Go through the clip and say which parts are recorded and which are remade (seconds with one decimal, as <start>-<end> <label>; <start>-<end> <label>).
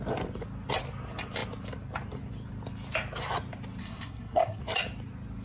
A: 0.0-3.8 recorded; 3.8-4.6 remade; 4.6-5.4 recorded